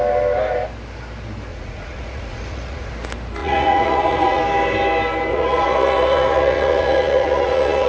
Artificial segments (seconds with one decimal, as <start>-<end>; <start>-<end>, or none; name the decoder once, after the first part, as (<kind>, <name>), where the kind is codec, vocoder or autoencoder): 1.5-2.9 (vocoder, Vocos); 3.4-4.4; 5.3-7.9